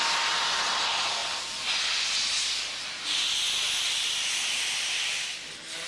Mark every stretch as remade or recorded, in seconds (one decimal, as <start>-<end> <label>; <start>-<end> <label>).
0.0-5.9 recorded